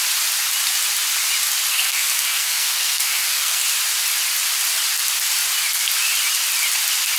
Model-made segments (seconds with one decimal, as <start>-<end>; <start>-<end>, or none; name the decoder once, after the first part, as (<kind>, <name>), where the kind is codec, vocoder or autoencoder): 1.7-3.6 (codec, SNAC)